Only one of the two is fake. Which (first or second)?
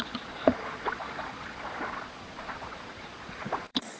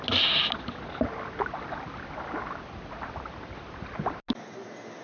first